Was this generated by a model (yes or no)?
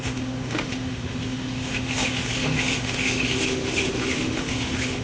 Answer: yes